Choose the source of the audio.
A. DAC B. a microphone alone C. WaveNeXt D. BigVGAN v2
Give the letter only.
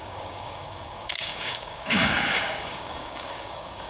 A